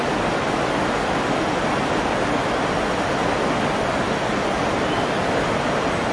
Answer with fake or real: real